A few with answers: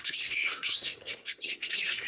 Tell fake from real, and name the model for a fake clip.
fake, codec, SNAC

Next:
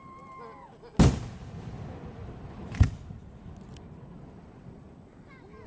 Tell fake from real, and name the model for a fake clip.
real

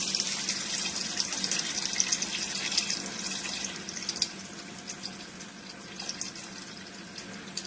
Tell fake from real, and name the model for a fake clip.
real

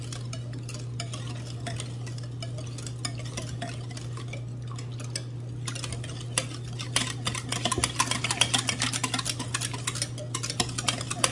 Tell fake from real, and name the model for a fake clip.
real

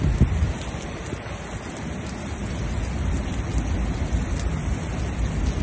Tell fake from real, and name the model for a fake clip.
real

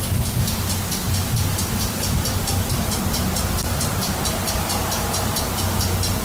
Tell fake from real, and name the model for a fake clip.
real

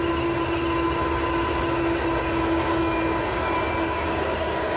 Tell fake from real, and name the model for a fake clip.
real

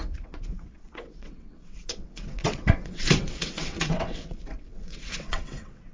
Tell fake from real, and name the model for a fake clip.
fake, vocoder, WaveNeXt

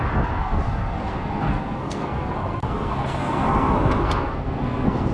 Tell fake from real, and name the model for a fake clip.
fake, codec, SNAC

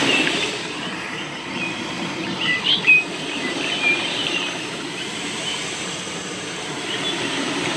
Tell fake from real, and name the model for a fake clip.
fake, vocoder, BigVGAN v2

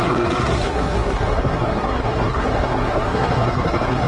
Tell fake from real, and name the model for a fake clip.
fake, codec, SNAC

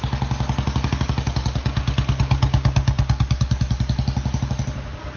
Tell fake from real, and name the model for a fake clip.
real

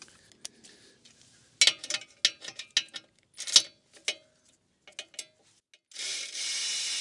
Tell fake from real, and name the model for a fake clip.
real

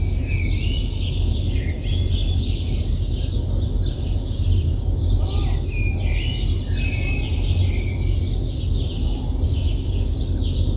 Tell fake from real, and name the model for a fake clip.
real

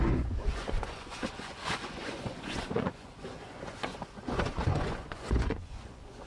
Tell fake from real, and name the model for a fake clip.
fake, vocoder, Vocos